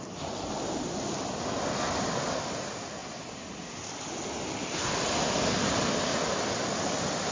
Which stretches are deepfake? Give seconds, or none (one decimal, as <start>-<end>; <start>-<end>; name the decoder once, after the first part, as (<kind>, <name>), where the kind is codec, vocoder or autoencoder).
none